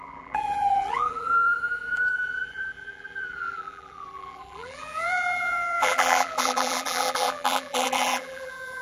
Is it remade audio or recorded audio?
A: remade